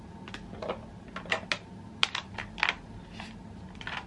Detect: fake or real real